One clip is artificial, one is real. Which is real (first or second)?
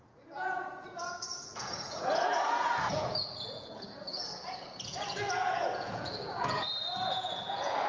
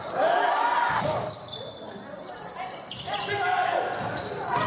second